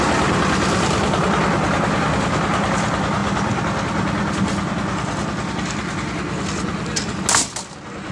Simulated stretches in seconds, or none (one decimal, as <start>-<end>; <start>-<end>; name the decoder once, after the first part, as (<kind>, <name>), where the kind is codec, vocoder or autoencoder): none